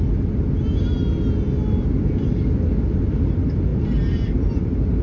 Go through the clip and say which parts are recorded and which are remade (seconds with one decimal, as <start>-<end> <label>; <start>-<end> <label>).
0.0-5.0 recorded